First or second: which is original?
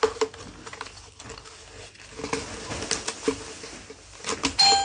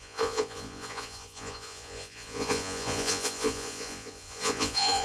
first